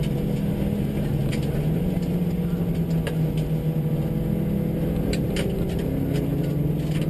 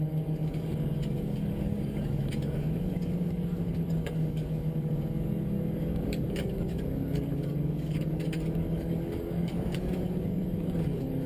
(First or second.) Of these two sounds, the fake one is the second